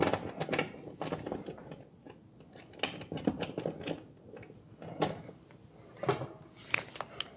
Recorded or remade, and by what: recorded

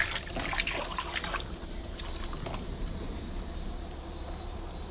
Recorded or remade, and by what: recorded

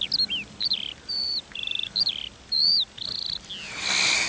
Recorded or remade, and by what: recorded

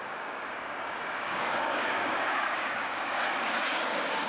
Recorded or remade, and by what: remade, codec, DAC